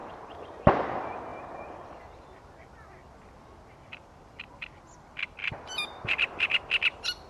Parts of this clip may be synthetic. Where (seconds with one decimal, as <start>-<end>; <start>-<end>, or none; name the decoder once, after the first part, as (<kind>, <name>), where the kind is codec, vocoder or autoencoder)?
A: 0.0-0.6 (vocoder, BigVGAN v2); 5.4-6.6